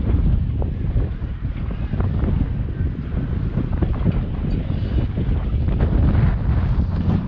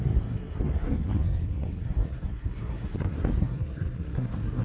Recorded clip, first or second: first